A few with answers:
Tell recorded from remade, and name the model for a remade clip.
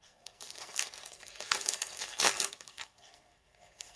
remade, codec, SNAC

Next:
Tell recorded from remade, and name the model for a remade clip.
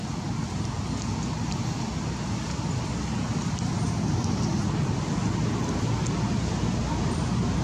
recorded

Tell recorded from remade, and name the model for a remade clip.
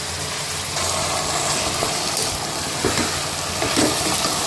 recorded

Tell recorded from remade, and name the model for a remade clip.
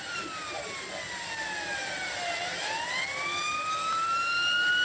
recorded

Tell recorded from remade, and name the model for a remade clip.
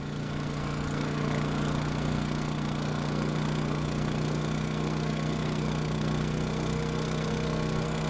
remade, codec, SNAC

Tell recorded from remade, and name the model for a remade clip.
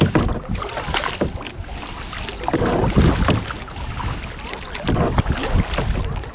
recorded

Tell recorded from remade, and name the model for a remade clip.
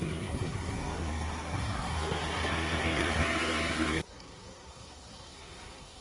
remade, codec, SNAC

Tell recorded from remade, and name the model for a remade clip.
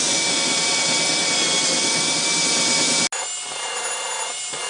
recorded